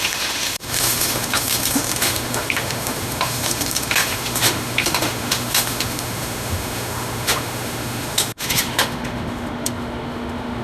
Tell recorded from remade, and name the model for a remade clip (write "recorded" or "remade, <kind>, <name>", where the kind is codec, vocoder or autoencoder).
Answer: remade, autoencoder, DAC-VAE